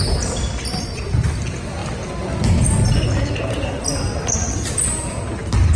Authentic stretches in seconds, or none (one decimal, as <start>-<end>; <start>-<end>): 0.0-1.8; 4.7-5.8